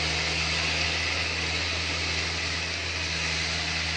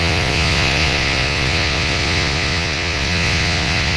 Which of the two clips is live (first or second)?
first